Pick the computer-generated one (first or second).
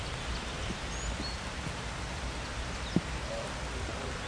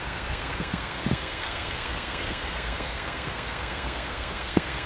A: second